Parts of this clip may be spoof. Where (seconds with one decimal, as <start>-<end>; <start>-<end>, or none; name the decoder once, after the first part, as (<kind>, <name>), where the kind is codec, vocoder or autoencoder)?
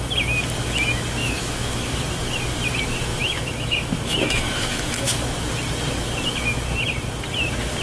1.2-2.0 (autoencoder, DAC-VAE); 3.1-5.3